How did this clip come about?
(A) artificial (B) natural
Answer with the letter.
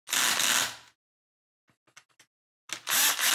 B